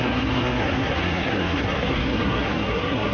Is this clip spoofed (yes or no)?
yes